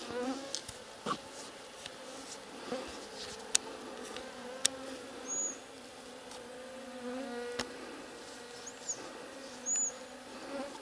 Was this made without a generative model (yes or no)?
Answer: yes